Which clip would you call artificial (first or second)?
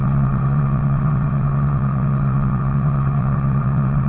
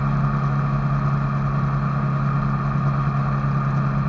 first